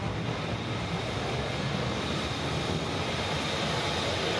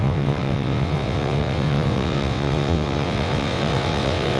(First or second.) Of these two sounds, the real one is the first